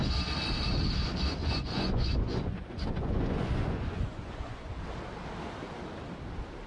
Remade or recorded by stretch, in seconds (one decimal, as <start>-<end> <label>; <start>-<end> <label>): 0.0-1.4 recorded; 1.4-4.7 remade; 4.7-6.7 recorded